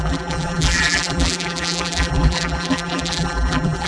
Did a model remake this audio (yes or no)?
yes